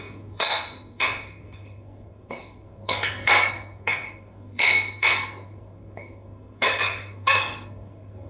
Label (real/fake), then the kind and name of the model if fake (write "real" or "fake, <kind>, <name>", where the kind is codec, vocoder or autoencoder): fake, codec, SNAC